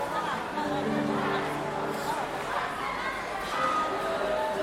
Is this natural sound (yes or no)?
yes